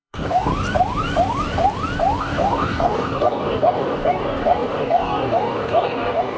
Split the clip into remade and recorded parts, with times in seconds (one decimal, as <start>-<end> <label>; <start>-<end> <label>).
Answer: 0.0-0.5 remade; 0.5-2.2 recorded; 2.2-6.4 remade